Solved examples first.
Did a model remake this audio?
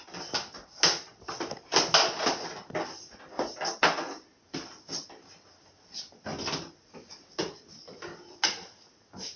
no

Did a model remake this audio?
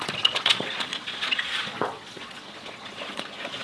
yes